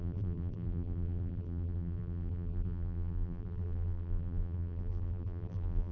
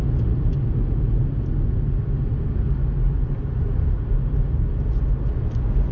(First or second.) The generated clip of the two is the first